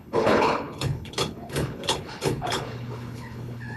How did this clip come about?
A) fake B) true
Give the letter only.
A